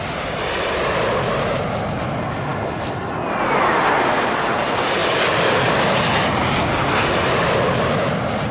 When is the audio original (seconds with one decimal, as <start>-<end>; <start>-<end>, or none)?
0.0-2.5; 3.7-5.0; 5.5-8.5